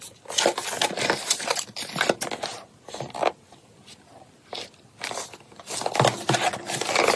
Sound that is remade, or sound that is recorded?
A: recorded